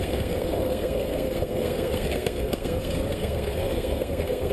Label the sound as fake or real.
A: fake